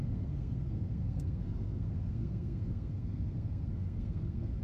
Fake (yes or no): yes